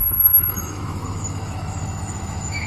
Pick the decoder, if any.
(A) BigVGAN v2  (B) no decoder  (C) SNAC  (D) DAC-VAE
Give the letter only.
D